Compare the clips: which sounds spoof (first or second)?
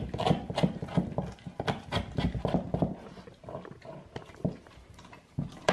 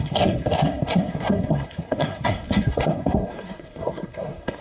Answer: second